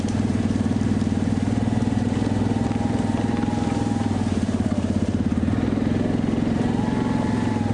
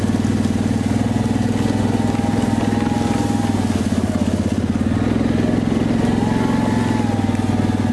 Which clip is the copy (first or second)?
first